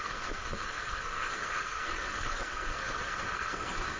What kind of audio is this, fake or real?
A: fake